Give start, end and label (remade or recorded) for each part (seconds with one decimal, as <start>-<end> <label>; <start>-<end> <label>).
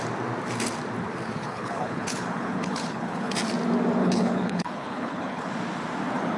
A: 0.0-1.4 recorded; 1.4-3.3 remade; 3.3-4.0 recorded; 4.0-5.5 remade; 5.5-6.4 recorded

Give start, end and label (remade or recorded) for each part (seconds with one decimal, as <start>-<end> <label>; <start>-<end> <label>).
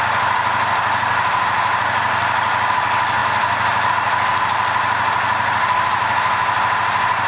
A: 0.0-7.3 recorded